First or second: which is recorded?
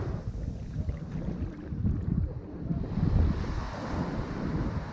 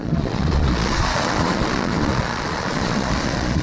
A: first